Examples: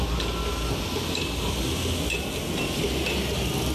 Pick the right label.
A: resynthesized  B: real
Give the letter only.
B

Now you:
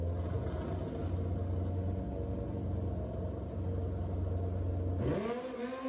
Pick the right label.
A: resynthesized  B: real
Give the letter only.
B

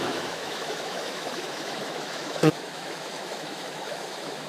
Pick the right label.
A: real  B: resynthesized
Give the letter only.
B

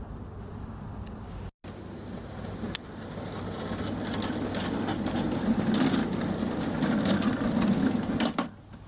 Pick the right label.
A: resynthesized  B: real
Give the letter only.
B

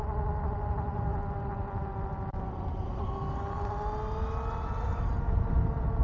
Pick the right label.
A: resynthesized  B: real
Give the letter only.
B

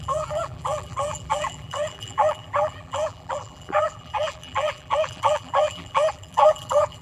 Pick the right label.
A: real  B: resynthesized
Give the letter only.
B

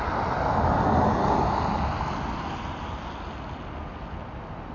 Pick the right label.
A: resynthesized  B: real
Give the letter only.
B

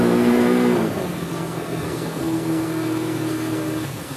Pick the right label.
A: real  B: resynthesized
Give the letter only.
B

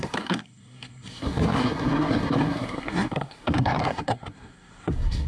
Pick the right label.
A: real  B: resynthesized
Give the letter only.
B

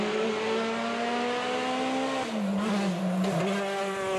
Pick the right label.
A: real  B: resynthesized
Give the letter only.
A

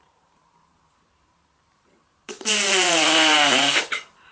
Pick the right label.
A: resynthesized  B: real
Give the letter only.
A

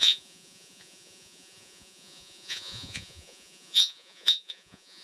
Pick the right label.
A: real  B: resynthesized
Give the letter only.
B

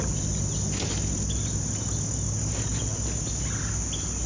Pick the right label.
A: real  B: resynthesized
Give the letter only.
A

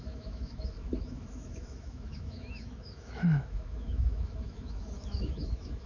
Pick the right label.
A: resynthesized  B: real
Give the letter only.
A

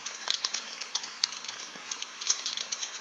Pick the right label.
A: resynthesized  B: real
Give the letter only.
A